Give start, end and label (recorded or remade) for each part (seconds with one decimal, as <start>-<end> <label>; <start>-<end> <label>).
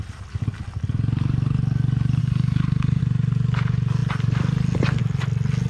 0.0-2.2 recorded; 2.2-3.0 remade; 3.0-5.7 recorded